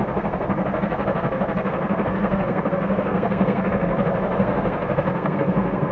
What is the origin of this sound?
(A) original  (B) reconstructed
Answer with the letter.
B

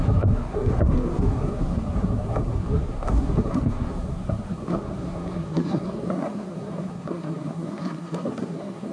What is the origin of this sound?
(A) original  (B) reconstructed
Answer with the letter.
B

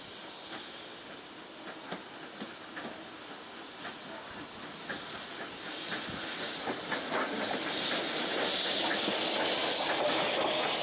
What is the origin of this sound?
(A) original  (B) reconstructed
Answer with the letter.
A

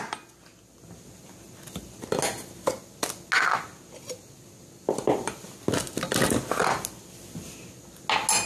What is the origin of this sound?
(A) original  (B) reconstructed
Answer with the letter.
A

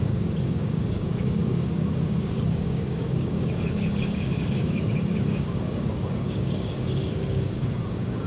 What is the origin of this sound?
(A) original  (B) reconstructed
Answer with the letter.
B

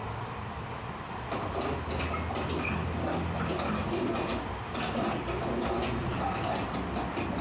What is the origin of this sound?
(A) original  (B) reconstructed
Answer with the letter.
A